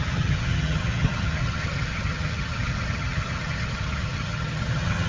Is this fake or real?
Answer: fake